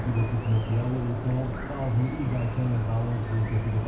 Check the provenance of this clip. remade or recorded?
recorded